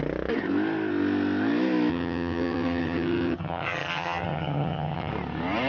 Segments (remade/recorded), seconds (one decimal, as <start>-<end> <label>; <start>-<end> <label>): 0.0-1.9 recorded; 1.9-5.1 remade; 5.1-5.7 recorded